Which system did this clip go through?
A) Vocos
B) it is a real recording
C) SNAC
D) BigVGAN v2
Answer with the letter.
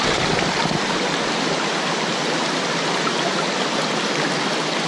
B